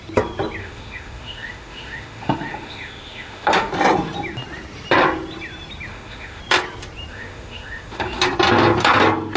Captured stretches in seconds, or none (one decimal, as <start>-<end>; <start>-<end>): 0.0-0.6; 3.7-5.9; 6.4-7.1; 8.2-9.4